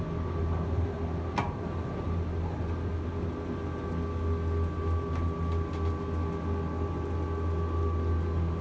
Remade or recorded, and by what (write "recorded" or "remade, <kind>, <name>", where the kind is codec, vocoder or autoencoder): recorded